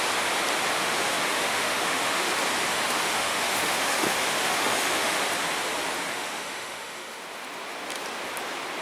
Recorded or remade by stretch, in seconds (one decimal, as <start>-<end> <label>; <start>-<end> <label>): 0.0-0.8 recorded; 0.8-2.3 remade; 2.3-2.7 recorded; 2.7-5.2 remade; 5.2-6.1 recorded; 6.1-7.2 remade; 7.2-8.8 recorded